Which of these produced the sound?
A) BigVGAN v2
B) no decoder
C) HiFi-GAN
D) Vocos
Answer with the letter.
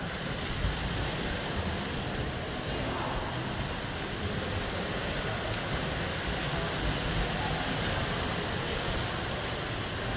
B